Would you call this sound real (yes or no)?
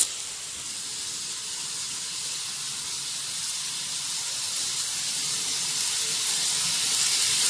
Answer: yes